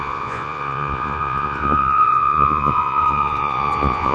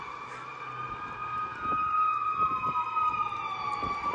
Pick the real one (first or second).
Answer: second